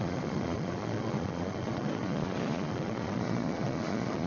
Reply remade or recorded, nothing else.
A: remade